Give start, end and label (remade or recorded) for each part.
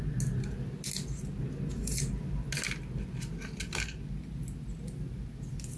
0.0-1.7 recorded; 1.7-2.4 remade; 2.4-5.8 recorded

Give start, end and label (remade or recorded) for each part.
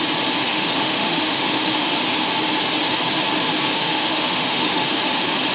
0.0-0.5 recorded; 0.5-1.9 remade; 1.9-3.7 recorded; 3.7-4.9 remade; 4.9-5.5 recorded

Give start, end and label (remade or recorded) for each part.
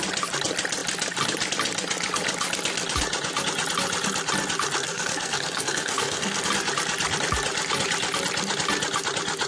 0.0-4.8 recorded; 4.8-6.5 remade; 6.5-9.5 recorded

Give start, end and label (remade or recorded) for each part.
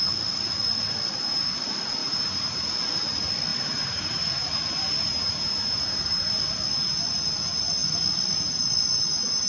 0.0-2.0 recorded; 2.0-2.7 remade; 2.7-3.5 recorded; 3.5-6.4 remade; 6.4-9.5 recorded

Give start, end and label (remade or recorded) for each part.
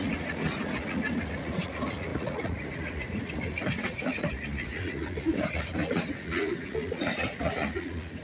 0.0-8.2 remade